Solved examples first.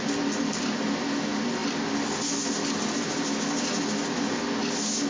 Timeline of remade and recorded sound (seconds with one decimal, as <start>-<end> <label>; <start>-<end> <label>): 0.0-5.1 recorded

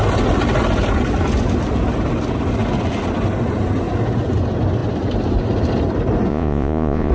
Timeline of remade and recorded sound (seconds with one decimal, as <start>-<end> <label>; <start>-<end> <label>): 0.0-6.3 recorded; 6.3-7.1 remade

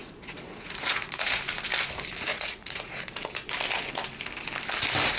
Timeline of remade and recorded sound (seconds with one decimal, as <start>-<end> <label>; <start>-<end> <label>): 0.0-1.4 remade; 1.4-2.3 recorded; 2.3-2.9 remade; 2.9-5.2 recorded

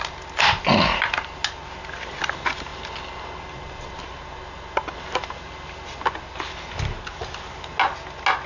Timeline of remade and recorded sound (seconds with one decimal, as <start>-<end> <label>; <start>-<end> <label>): 0.0-8.5 recorded

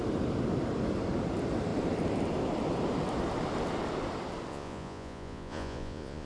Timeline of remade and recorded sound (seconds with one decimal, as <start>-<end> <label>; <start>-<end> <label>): 0.0-4.5 recorded; 4.5-6.3 remade